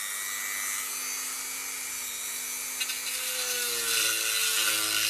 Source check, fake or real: real